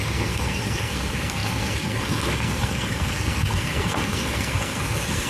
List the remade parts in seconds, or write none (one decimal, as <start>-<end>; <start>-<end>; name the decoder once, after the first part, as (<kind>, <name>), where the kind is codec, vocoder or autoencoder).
0.0-5.3 (codec, SNAC)